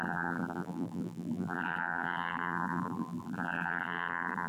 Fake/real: fake